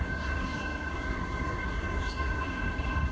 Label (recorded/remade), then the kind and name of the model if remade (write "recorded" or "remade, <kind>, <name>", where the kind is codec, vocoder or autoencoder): remade, codec, SNAC